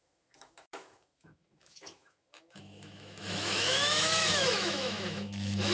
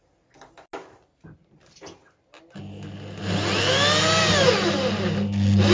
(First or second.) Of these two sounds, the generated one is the first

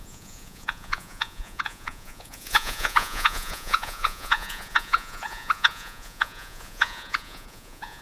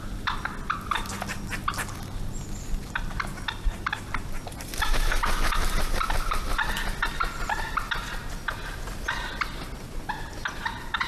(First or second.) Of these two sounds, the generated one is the first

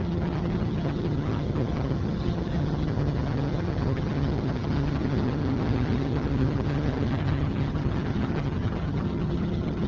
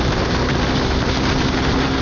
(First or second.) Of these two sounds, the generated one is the first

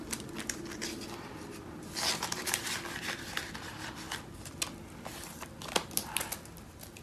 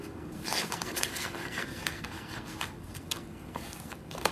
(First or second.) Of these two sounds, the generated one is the second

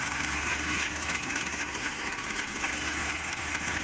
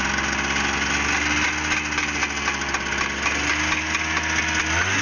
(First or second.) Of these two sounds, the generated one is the first